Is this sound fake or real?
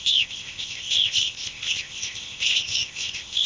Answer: fake